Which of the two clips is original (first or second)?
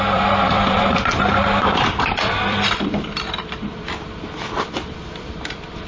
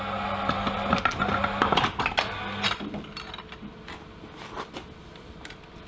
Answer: second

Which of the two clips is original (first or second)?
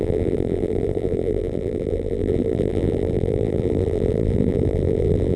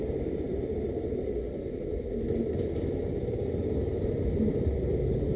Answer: second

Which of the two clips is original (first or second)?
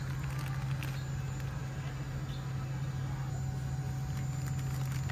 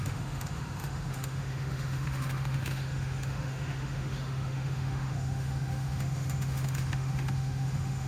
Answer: first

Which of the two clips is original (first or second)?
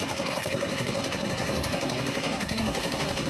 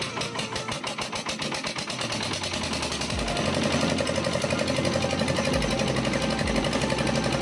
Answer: second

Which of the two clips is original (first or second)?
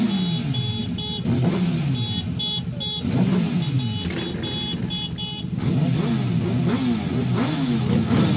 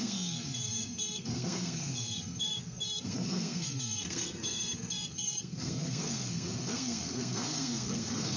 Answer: first